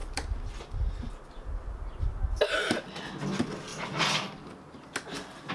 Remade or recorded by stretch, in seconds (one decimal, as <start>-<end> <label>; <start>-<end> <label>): 0.0-5.5 recorded